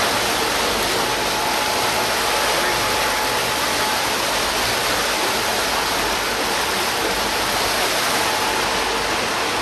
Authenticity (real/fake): real